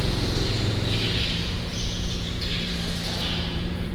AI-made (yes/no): yes